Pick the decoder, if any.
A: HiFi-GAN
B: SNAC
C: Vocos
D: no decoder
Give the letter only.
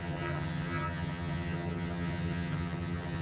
A